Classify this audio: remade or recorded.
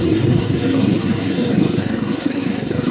remade